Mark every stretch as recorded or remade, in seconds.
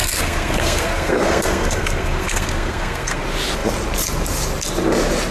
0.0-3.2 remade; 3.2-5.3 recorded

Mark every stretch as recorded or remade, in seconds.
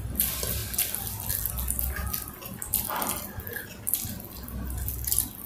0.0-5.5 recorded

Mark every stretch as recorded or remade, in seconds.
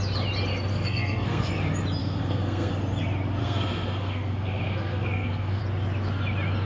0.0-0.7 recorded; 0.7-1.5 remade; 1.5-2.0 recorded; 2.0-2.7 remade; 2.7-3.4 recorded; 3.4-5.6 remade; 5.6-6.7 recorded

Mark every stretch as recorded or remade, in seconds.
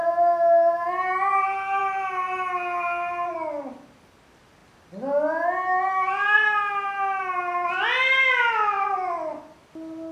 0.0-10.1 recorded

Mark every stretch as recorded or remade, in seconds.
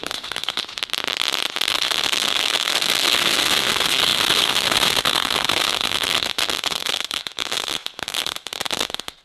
0.0-0.6 remade; 0.6-1.7 recorded; 1.7-9.2 remade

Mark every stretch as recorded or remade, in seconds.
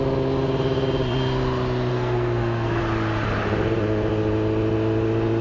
0.0-1.9 recorded; 1.9-2.8 remade; 2.8-5.4 recorded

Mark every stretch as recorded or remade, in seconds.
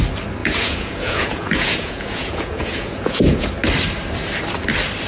0.0-0.4 recorded; 0.4-3.5 remade; 3.5-5.1 recorded